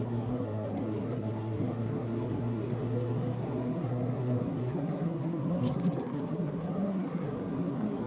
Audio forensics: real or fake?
fake